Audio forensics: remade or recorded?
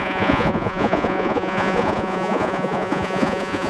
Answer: remade